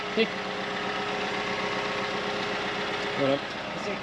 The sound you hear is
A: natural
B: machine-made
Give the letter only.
A